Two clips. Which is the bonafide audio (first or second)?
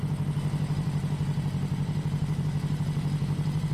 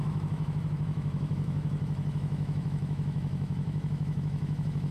first